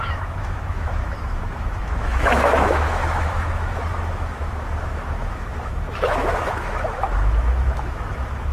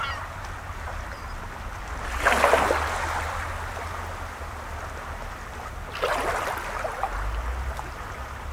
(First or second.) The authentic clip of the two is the second